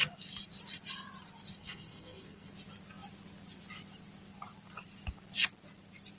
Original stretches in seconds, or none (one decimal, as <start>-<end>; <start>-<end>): 0.0-1.6; 2.5-6.2